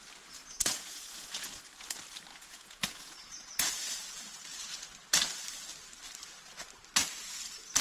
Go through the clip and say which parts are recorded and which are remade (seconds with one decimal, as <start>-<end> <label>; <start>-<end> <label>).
0.0-0.4 recorded; 0.4-1.6 remade; 1.6-2.3 recorded; 2.3-4.8 remade; 4.8-7.8 recorded